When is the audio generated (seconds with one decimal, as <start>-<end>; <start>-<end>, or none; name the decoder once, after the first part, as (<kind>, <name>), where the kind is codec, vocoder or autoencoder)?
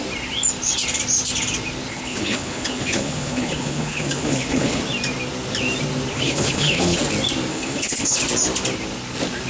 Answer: 1.9-4.8 (codec, HILCodec); 6.1-7.0; 7.5-8.2